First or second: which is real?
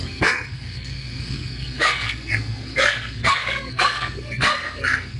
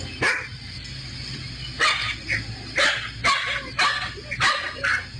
second